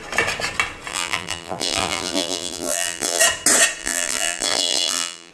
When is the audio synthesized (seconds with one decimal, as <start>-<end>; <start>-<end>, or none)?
0.9-3.2; 3.8-5.3